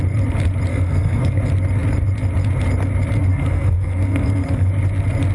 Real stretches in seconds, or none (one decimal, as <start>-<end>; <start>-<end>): 0.0-0.7; 1.4-3.3; 4.7-5.3

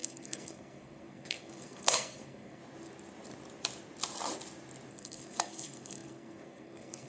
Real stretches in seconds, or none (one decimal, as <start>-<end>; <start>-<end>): 2.6-4.9

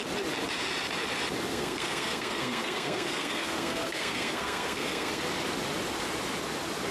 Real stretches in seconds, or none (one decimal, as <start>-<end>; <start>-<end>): 0.0-1.5; 5.2-6.9

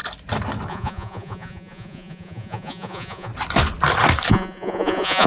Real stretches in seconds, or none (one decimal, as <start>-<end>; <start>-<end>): 0.0-0.7; 3.3-4.3

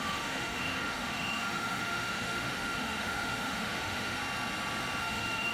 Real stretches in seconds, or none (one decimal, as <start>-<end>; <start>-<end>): 4.2-5.0

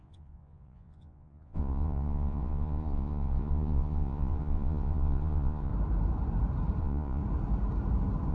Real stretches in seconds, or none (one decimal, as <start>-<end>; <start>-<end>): 5.7-6.8; 7.2-8.3

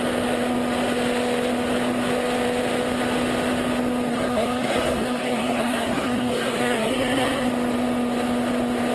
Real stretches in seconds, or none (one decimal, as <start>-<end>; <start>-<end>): 0.0-4.1; 7.5-8.9